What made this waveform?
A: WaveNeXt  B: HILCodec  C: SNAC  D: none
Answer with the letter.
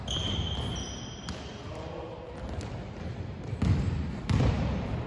D